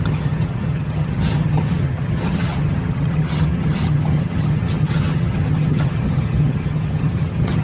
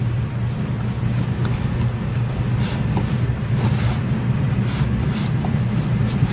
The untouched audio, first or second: second